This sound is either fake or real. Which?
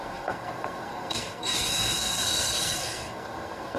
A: fake